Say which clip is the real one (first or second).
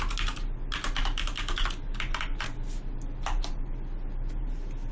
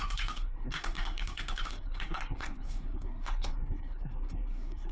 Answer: first